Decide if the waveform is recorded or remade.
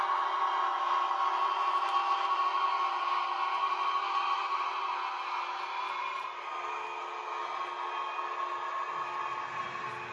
recorded